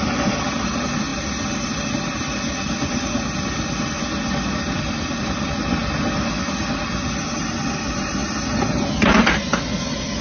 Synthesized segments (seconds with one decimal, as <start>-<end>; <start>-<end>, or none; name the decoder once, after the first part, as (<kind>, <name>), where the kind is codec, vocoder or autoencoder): none